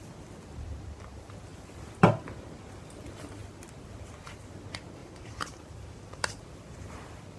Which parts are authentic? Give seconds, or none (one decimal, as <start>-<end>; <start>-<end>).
0.0-5.0; 6.5-7.4